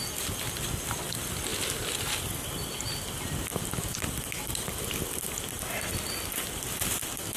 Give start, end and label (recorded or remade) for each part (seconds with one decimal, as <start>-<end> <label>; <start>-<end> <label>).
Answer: 0.0-7.4 recorded